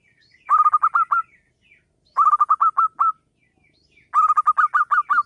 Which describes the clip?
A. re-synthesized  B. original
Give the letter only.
B